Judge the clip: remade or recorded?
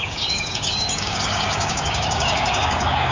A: remade